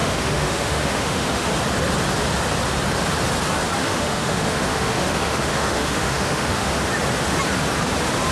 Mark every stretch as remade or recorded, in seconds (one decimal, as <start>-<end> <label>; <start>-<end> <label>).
0.0-1.5 remade; 1.5-3.8 recorded; 3.8-6.7 remade; 6.7-8.3 recorded